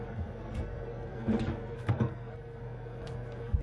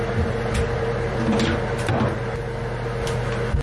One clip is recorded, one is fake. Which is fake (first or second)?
first